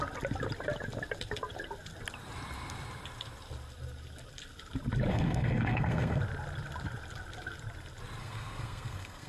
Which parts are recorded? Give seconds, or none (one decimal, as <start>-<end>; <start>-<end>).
0.0-5.1; 6.2-8.2